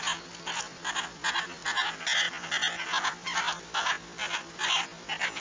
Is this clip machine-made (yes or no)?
no